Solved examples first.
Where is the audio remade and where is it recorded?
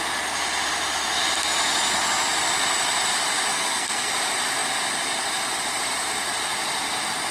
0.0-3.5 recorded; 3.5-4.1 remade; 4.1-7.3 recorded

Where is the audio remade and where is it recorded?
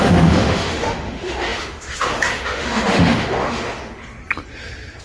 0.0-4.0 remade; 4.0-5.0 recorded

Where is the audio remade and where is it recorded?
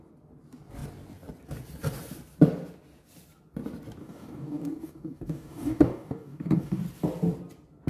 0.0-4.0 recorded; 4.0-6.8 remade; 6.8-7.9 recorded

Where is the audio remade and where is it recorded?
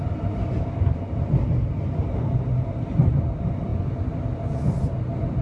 0.0-5.4 recorded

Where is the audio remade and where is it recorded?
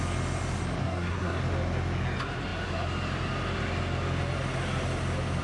0.0-0.8 recorded; 0.8-1.4 remade; 1.4-5.4 recorded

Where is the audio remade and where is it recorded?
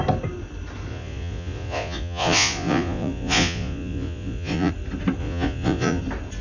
0.0-0.9 recorded; 0.9-4.7 remade; 4.7-5.2 recorded; 5.2-6.0 remade; 6.0-6.4 recorded